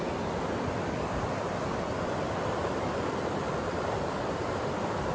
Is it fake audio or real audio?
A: fake